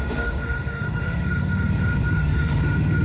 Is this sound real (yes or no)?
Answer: no